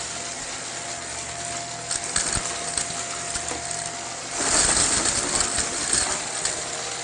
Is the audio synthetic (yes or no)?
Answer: no